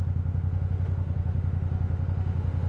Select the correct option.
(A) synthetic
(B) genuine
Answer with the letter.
A